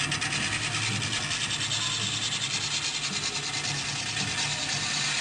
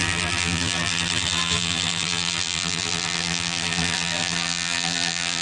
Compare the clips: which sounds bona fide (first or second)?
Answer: first